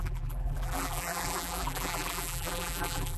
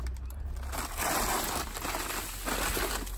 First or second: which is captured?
second